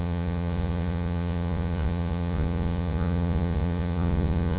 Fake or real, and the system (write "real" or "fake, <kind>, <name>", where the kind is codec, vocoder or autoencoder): fake, vocoder, Vocos